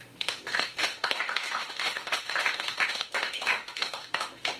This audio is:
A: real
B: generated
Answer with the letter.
B